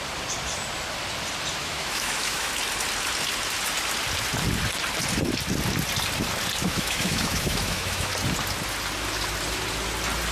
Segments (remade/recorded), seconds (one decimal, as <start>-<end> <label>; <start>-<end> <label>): 0.0-1.6 recorded; 1.6-2.5 remade; 2.5-6.6 recorded; 6.6-8.1 remade; 8.1-10.3 recorded